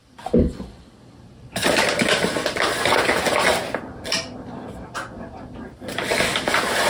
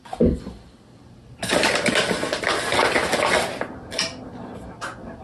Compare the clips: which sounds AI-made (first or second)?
first